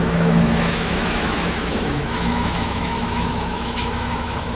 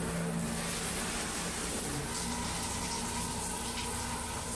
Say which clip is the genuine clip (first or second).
second